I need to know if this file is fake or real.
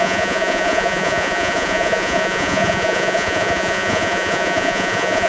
fake